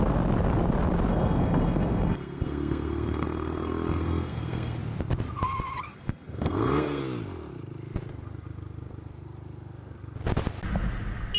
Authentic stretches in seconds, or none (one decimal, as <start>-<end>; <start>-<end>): 0.0-1.1; 4.8-5.9; 7.0-11.4